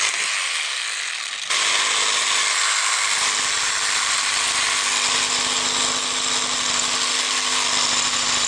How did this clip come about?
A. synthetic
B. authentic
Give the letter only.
B